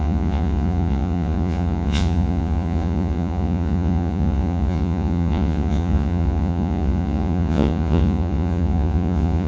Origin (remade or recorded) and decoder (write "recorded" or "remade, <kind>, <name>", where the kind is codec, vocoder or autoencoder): remade, vocoder, Vocos